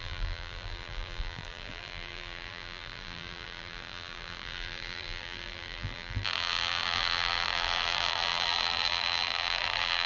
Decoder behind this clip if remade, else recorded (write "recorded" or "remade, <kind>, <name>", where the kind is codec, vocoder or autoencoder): remade, vocoder, BigVGAN v2